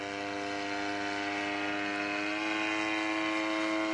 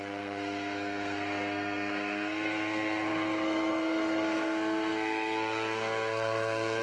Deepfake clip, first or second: second